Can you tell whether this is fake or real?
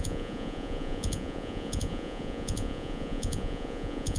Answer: fake